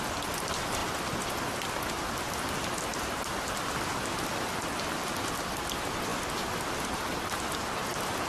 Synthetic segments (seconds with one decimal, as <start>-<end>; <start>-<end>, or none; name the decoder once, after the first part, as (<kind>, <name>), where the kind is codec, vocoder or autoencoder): none